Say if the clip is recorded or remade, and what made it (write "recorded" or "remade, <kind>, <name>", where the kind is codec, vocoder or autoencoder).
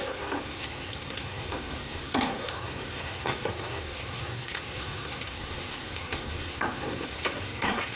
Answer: remade, codec, SNAC